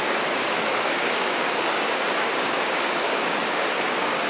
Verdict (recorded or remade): remade